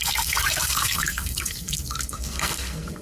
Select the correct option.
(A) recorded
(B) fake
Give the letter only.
B